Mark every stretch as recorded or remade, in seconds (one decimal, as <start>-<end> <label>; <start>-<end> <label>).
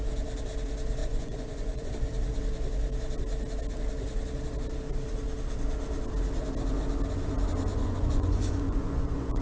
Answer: 0.0-1.0 recorded; 1.0-1.9 remade; 1.9-7.7 recorded; 7.7-9.4 remade